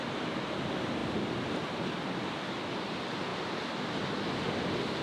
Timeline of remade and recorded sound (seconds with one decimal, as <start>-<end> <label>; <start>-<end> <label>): 0.0-5.0 recorded